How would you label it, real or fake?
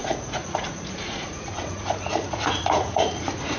fake